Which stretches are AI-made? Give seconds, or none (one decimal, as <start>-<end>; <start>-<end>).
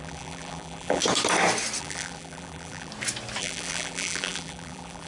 0.0-1.0; 1.8-2.9; 3.4-5.1